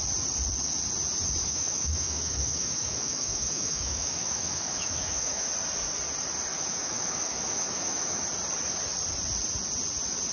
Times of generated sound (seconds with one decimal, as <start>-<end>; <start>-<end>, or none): 1.4-5.5; 6.5-8.2